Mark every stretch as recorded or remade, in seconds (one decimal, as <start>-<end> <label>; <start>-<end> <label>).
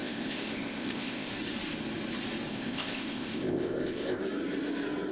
0.0-1.3 remade; 1.3-2.5 recorded; 2.5-4.2 remade; 4.2-5.1 recorded